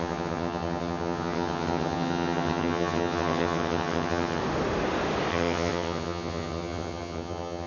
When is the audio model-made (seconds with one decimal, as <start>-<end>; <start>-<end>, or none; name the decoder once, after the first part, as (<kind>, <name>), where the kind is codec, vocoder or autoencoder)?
0.0-4.4 (vocoder, HiFi-GAN); 5.3-7.7